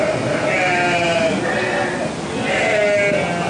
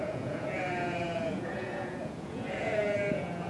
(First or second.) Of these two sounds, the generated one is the second